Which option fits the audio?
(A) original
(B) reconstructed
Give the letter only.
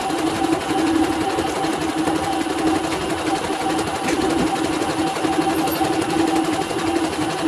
A